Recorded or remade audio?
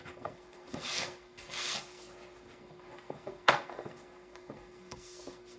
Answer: remade